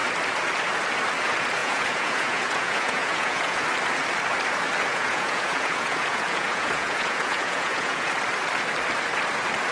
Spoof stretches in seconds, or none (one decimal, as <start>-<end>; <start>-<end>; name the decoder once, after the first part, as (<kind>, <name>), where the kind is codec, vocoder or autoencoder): 1.6-3.6 (vocoder, Vocos); 4.9-8.1